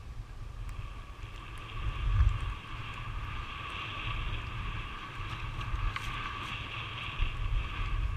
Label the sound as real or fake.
real